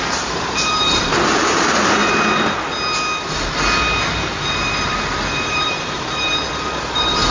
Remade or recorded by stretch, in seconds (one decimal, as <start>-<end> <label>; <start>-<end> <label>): 0.0-2.0 remade; 2.0-4.5 recorded; 4.5-7.3 remade